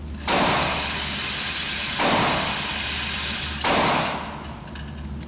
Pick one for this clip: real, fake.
real